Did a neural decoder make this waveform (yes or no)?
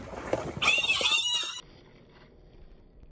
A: no